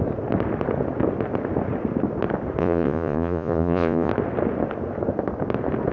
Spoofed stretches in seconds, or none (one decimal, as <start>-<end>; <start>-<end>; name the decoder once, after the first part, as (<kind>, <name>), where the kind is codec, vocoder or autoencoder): 2.6-4.1 (vocoder, Vocos)